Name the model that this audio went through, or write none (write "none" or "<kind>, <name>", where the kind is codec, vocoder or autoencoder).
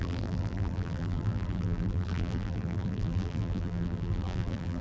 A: vocoder, BigVGAN v2